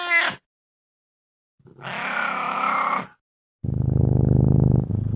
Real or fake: real